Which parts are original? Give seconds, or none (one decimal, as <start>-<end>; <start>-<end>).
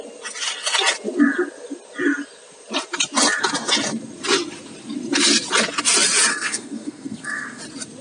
0.0-6.3; 7.6-8.0